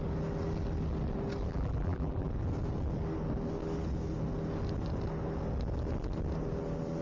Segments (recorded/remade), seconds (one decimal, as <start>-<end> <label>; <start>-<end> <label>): 0.0-1.5 recorded; 1.5-2.3 remade; 2.3-7.0 recorded